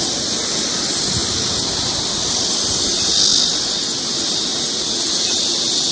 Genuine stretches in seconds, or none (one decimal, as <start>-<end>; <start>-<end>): 0.0-4.5; 5.4-5.9

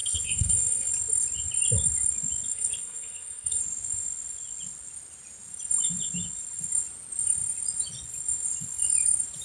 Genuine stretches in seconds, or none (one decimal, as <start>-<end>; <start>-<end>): 0.9-2.5; 3.6-9.4

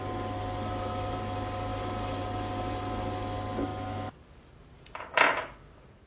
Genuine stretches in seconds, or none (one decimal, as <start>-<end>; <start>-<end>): 0.0-6.1

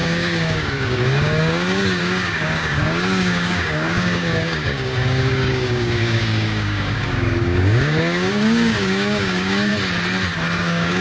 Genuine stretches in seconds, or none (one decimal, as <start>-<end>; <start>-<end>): 9.7-10.6

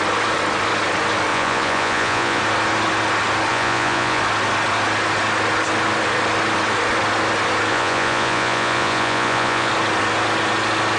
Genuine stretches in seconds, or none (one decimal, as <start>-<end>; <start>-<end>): 0.0-1.3; 2.4-3.5; 4.2-7.7; 9.7-11.0

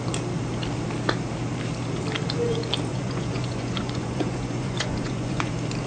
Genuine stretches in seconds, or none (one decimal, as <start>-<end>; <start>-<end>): 0.0-2.9; 5.5-5.9

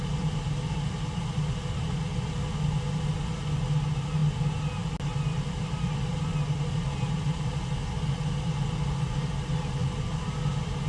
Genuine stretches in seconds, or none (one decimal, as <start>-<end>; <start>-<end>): 0.0-10.9

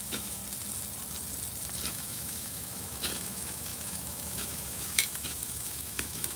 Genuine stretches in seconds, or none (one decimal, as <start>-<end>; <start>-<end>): 0.4-1.9